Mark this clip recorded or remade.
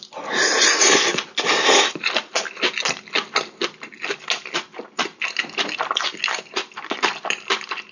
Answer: recorded